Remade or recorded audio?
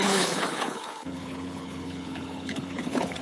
remade